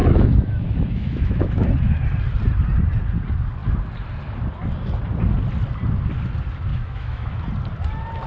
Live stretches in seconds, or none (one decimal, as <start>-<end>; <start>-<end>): 1.7-6.7; 7.4-8.3

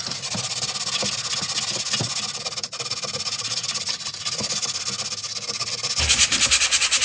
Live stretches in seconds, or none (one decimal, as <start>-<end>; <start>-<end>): 0.0-7.0

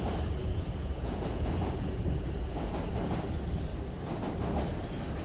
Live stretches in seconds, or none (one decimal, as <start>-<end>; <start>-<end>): 0.0-0.4; 2.8-5.2

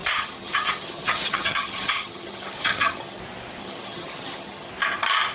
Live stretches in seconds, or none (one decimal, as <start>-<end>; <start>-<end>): 3.2-3.6; 4.7-5.3

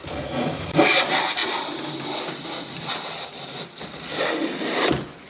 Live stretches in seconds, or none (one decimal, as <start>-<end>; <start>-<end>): 0.0-5.3

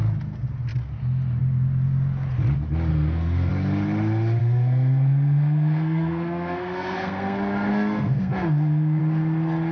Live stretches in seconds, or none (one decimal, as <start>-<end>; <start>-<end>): 0.0-2.9; 3.5-4.4; 9.0-9.7

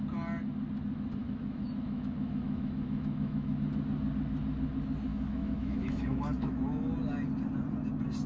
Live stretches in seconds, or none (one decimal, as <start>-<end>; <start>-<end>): 0.0-1.2; 3.6-5.1; 6.9-8.3

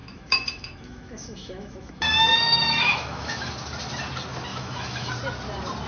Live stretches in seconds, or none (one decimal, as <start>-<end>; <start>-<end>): 3.5-4.5; 5.1-5.9